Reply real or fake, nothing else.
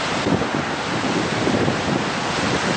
real